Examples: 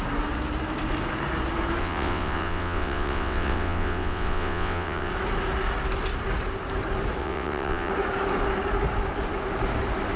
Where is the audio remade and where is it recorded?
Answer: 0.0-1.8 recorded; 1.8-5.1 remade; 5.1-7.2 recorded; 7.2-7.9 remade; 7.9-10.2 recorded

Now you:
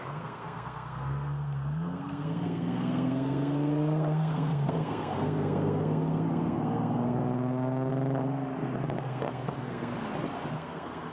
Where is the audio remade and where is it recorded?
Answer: 0.0-7.9 remade; 7.9-9.0 recorded; 9.0-9.9 remade; 9.9-10.5 recorded; 10.5-11.1 remade

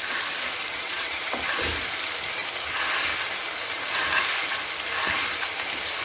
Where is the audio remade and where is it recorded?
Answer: 0.0-0.7 recorded; 0.7-1.2 remade; 1.2-6.0 recorded

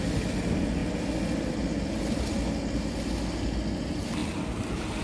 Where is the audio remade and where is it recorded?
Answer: 0.0-5.0 recorded

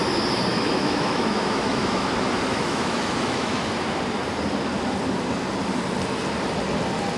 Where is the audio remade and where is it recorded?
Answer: 0.0-0.5 recorded; 0.5-2.1 remade; 2.1-2.5 recorded; 2.5-3.6 remade; 3.6-7.2 recorded

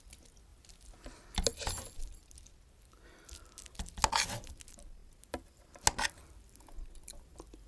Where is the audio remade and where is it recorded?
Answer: 0.0-7.7 recorded

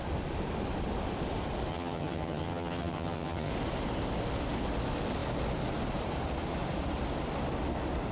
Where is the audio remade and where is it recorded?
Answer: 0.0-1.7 recorded; 1.7-3.5 remade; 3.5-8.1 recorded

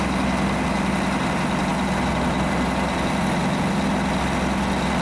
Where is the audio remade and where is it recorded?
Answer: 0.0-5.0 recorded